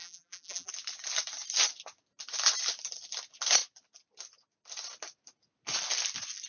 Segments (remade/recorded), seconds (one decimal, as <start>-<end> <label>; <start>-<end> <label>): 0.0-0.7 remade; 0.7-6.5 recorded